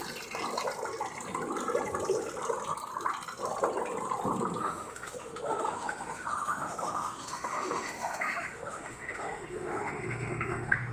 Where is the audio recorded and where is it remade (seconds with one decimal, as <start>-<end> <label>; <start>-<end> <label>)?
0.0-4.6 recorded; 4.6-10.9 remade